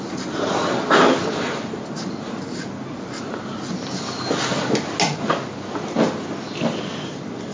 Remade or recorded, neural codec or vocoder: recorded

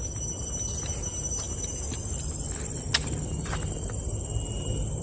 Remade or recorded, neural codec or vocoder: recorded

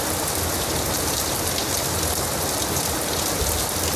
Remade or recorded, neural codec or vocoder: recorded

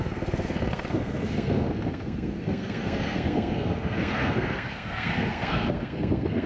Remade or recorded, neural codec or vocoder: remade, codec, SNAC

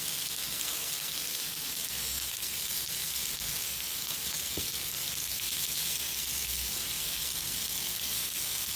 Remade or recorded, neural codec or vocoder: remade, codec, SNAC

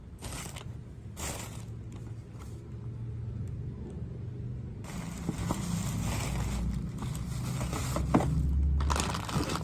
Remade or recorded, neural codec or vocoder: recorded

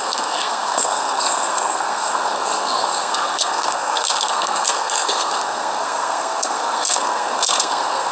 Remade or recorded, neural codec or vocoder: remade, codec, SNAC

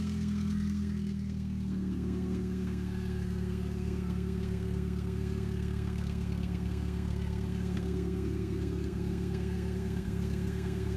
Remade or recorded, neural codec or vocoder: remade, codec, SNAC